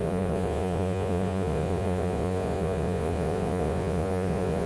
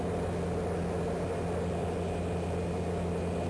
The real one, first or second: second